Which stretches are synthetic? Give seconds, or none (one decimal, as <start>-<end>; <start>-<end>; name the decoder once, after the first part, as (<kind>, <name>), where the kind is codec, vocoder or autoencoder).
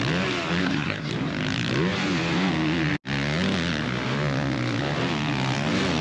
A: 0.6-1.1 (codec, SNAC)